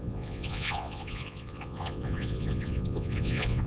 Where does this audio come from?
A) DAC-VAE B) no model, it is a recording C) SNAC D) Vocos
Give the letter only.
D